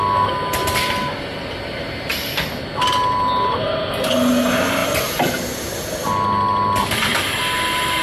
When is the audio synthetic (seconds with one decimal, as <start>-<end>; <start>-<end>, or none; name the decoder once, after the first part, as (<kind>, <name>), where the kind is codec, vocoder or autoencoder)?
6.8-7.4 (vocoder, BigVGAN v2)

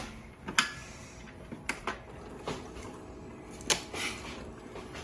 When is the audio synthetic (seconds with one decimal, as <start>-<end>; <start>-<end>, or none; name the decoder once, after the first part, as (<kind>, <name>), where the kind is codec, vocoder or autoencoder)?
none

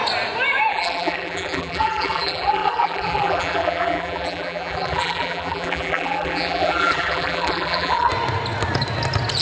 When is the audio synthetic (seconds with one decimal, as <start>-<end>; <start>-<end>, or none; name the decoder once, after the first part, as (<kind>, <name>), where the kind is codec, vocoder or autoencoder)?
0.7-8.1 (vocoder, BigVGAN v2)

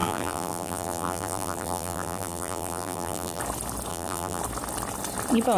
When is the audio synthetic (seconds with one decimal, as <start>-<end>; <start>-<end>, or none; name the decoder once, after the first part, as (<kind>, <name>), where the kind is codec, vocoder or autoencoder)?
0.0-3.4 (vocoder, BigVGAN v2); 3.9-4.4